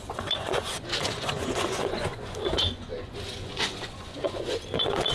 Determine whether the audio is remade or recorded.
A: remade